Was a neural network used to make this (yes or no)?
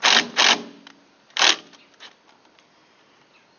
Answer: no